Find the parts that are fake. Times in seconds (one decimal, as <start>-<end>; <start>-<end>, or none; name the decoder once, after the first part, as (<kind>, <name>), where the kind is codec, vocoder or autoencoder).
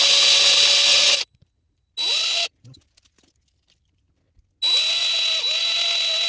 0.9-1.9 (vocoder, Vocos)